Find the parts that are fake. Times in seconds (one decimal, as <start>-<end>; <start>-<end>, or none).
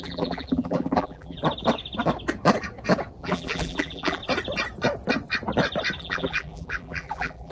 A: 0.0-1.4; 3.2-4.2; 6.0-7.5